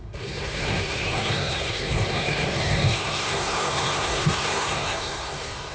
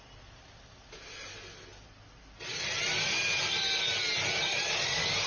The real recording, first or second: second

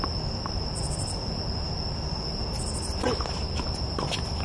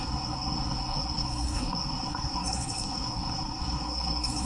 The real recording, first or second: first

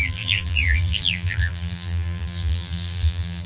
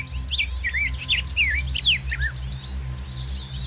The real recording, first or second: second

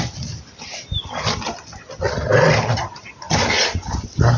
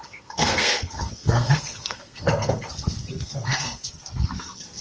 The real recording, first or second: first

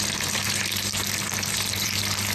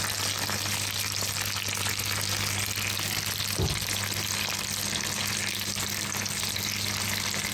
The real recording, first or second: second